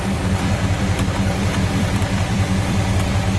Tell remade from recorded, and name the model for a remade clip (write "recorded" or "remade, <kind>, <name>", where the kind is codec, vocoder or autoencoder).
remade, vocoder, BigVGAN v2